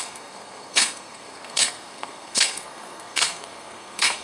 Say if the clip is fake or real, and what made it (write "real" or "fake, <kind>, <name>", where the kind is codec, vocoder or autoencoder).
fake, codec, SNAC